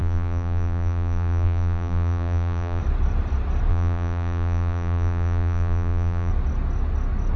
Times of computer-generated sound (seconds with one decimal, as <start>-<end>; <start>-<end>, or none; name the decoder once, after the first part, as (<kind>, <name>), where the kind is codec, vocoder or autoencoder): 0.0-2.8 (vocoder, BigVGAN v2); 3.7-6.3